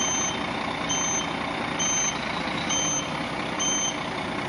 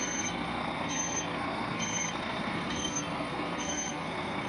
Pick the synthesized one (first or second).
second